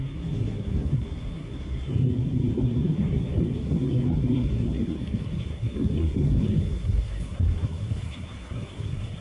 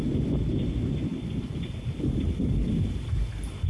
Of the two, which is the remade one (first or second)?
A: first